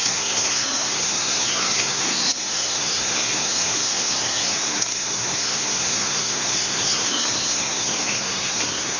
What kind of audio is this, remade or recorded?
remade